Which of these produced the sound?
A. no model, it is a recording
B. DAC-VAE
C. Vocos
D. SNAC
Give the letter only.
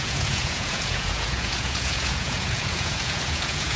C